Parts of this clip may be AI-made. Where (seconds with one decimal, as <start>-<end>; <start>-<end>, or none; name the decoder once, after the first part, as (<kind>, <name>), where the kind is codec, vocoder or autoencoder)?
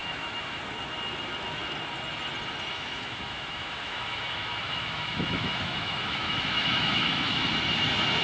0.0-0.6 (autoencoder, DAC-VAE); 2.7-7.5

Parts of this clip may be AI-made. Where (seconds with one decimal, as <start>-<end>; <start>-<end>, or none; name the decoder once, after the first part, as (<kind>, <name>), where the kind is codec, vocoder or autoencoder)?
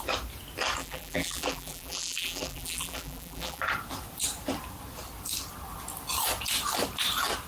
0.8-3.6 (vocoder, BigVGAN v2)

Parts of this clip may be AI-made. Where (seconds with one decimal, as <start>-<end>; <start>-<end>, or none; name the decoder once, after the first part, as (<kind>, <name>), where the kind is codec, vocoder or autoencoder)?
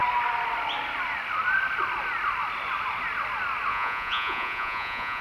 3.7-5.2 (vocoder, Vocos)